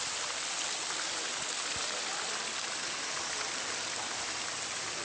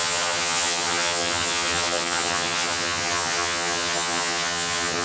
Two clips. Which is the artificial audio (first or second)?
second